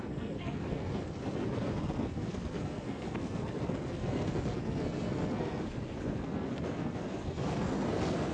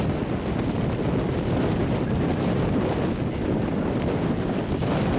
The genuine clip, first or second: second